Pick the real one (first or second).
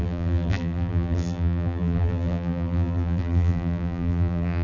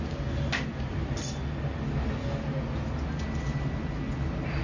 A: second